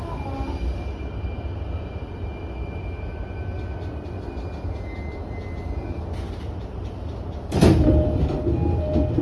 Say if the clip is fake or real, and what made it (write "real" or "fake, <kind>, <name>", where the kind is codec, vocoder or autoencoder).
real